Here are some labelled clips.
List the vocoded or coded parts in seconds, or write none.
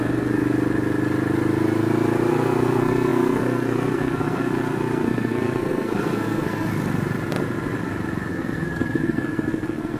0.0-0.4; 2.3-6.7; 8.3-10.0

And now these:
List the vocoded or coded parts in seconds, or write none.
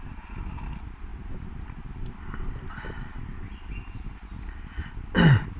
none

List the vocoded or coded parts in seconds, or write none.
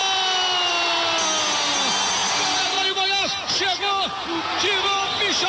none